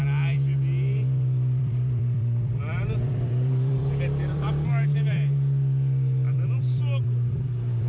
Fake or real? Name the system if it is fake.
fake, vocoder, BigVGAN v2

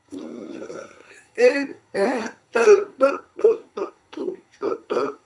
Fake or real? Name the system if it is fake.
fake, codec, SNAC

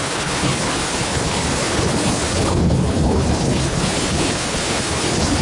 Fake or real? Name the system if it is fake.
fake, codec, HILCodec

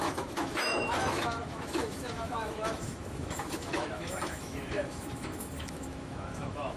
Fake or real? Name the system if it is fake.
fake, autoencoder, DAC-VAE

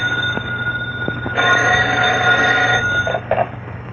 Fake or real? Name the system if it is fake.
fake, codec, DAC